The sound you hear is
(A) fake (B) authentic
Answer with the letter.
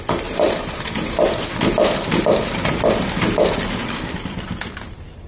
B